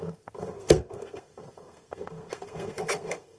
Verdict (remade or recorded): remade